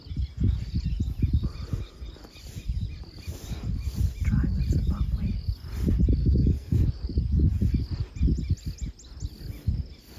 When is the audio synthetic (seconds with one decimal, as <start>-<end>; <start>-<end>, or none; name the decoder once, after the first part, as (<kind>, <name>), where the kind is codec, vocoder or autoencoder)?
6.2-6.9 (codec, SNAC)